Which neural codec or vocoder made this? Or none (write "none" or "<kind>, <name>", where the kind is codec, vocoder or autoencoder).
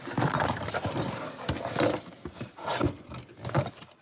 none